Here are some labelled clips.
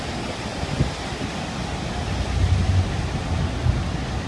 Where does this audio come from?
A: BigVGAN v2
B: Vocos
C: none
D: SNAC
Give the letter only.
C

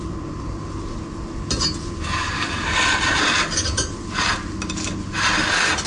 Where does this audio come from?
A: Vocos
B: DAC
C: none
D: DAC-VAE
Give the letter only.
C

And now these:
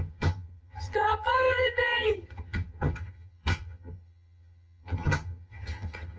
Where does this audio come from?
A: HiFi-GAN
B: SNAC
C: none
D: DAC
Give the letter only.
A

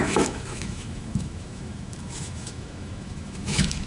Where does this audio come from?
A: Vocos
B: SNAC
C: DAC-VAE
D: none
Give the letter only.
C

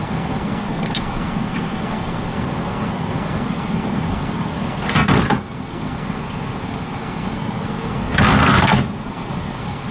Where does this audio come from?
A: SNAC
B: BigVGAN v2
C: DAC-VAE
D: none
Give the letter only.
A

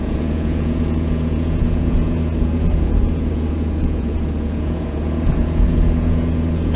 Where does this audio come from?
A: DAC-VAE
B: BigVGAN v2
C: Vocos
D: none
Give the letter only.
C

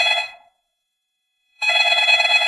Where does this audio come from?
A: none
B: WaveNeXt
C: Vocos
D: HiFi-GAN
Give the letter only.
C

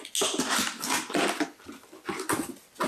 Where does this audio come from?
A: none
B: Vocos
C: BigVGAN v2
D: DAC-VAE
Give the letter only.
A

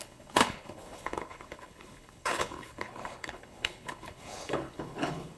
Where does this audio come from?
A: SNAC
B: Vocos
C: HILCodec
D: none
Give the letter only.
C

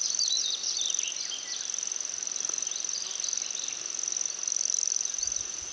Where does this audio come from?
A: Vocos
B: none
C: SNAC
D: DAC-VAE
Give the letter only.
B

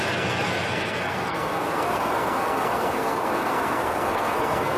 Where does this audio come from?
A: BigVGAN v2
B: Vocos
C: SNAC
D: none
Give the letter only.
C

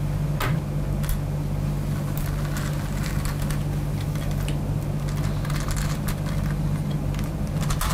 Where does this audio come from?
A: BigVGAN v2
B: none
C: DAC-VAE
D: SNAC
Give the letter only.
B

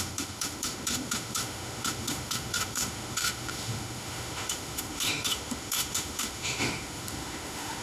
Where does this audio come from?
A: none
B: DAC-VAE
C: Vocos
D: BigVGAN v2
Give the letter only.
B